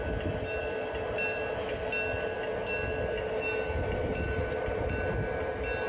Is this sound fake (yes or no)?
no